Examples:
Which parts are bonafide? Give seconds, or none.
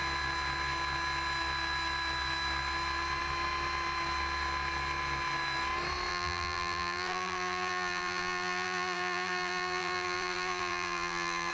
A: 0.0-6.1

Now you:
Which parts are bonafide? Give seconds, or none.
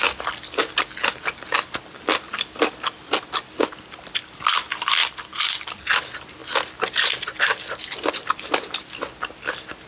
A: 0.0-5.0; 5.9-9.9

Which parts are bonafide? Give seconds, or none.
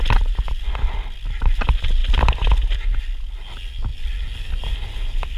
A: 0.0-5.4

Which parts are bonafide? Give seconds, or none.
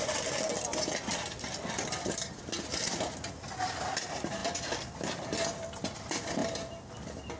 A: 4.4-5.0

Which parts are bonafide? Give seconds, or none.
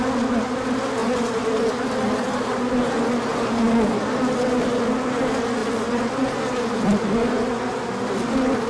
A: 0.0-5.6; 7.3-8.7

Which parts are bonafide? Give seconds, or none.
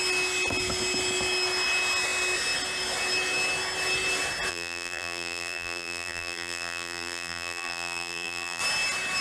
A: 0.0-4.5; 8.6-9.2